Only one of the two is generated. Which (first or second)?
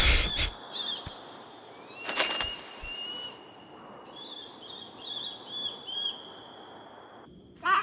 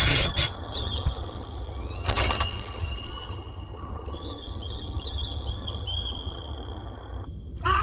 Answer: second